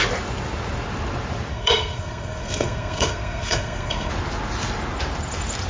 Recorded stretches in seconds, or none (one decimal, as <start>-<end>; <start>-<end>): 0.0-1.5; 4.1-5.7